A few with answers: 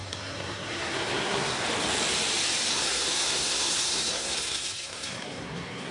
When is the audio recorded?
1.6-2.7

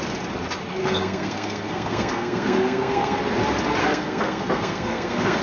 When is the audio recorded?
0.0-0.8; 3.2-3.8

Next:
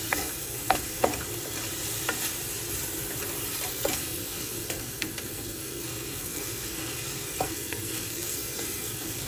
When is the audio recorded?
1.1-3.7

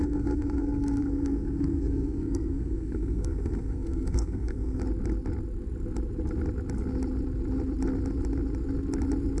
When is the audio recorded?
4.8-9.4

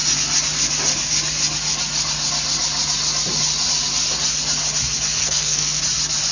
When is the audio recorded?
0.0-5.2; 5.8-6.3

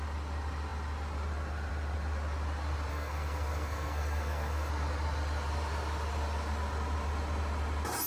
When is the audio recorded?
0.0-2.9; 4.7-8.1

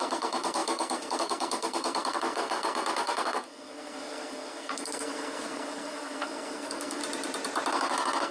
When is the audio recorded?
7.0-7.7

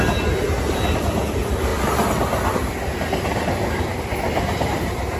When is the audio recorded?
0.0-5.2